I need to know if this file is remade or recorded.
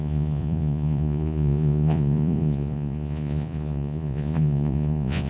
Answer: remade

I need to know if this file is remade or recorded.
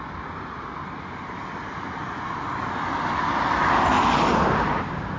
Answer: recorded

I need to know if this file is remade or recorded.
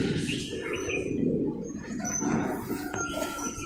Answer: remade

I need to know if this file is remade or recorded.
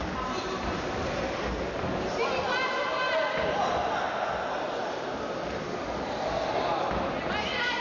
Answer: recorded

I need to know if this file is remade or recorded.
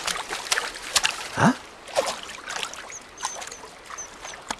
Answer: recorded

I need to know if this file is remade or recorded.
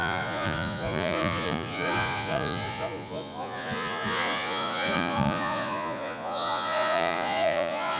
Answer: remade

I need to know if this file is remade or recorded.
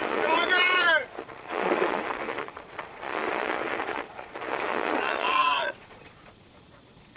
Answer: remade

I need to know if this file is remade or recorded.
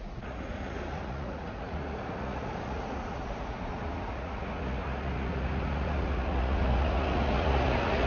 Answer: remade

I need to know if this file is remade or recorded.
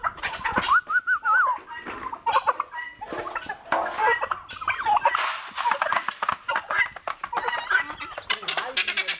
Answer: recorded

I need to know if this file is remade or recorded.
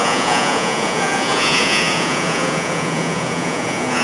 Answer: remade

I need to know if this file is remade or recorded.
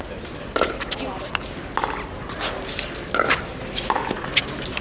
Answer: recorded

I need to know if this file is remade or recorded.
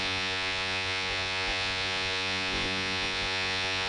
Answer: remade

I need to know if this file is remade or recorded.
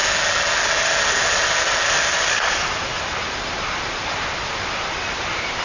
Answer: recorded